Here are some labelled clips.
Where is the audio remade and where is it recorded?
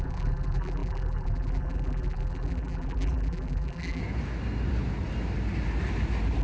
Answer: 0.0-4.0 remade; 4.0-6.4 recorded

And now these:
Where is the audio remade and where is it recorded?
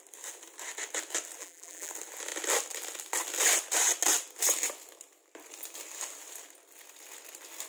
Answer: 0.0-1.4 recorded; 1.4-1.9 remade; 1.9-7.7 recorded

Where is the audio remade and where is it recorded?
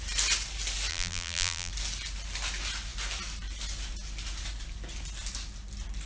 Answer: 0.0-0.9 recorded; 0.9-1.7 remade; 1.7-6.1 recorded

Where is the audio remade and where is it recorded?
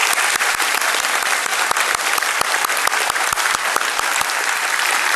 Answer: 0.0-0.5 recorded; 0.5-1.5 remade; 1.5-4.6 recorded; 4.6-5.2 remade